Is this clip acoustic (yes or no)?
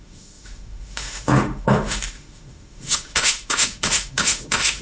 no